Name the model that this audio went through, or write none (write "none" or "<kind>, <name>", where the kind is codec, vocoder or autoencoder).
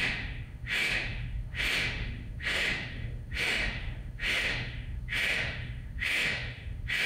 autoencoder, DAC-VAE